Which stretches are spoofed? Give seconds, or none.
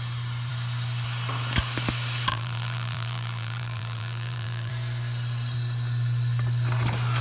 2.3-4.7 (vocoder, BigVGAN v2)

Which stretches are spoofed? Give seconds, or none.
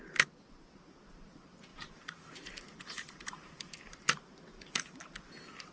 1.7-5.0 (vocoder, BigVGAN v2)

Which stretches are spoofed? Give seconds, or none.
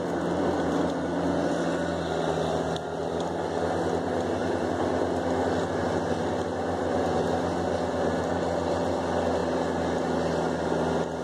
4.4-5.0 (vocoder, BigVGAN v2); 8.3-8.9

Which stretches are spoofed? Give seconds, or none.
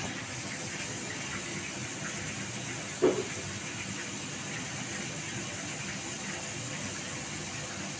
none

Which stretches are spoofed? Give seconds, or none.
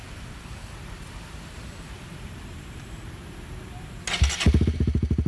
0.0-3.2 (vocoder, BigVGAN v2)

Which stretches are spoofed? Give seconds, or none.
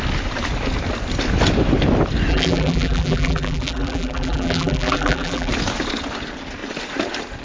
2.3-5.5 (vocoder, BigVGAN v2)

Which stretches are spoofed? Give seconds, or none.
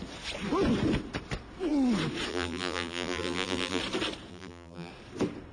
2.3-3.8 (vocoder, BigVGAN v2); 4.3-4.9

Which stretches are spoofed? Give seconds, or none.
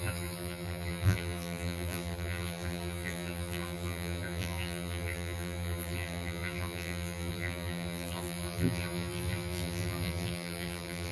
0.0-11.1 (vocoder, BigVGAN v2)